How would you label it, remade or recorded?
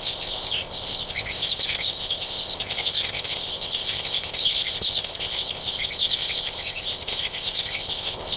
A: remade